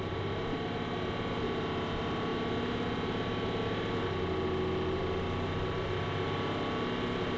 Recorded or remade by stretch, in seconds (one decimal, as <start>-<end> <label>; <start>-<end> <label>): 0.0-7.4 recorded